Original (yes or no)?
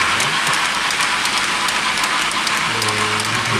yes